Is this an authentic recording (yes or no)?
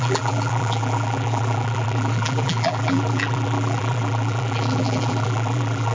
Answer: no